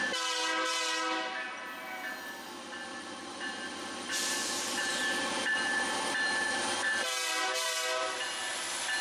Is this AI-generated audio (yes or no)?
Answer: no